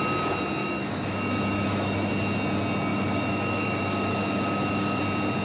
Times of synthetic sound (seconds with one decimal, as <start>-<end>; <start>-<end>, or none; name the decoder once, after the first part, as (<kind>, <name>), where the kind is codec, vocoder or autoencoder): 0.6-2.1 (autoencoder, DAC-VAE); 2.9-5.0

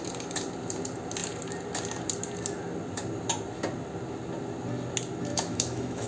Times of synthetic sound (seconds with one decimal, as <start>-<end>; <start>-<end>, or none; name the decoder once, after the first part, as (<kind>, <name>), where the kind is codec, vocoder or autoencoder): 5.3-6.1 (autoencoder, DAC-VAE)

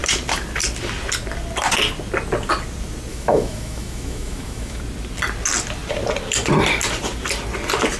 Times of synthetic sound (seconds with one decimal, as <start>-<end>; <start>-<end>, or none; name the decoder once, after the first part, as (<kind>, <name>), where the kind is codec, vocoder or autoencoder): 3.1-4.8 (autoencoder, DAC-VAE)

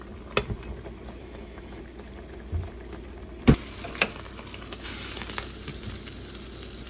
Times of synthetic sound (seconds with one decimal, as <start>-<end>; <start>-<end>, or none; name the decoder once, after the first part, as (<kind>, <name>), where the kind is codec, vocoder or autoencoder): 1.2-1.8 (autoencoder, DAC-VAE)

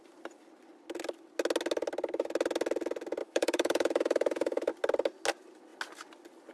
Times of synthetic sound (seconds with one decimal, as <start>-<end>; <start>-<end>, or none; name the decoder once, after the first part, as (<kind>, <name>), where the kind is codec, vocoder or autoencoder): 3.2-4.7 (autoencoder, DAC-VAE)

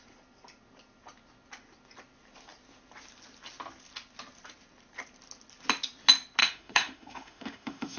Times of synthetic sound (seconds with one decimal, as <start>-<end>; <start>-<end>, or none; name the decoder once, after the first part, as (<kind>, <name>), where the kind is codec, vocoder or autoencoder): 6.4-8.0 (autoencoder, DAC-VAE)

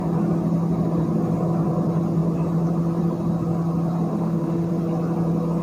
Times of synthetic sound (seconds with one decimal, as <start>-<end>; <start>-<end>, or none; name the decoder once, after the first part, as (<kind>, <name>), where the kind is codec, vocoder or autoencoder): 4.1-4.7 (autoencoder, DAC-VAE)

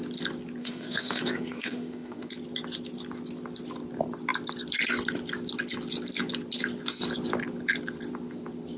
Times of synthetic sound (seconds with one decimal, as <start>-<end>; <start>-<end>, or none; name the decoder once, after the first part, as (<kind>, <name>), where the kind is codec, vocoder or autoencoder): 0.6-2.3 (autoencoder, DAC-VAE)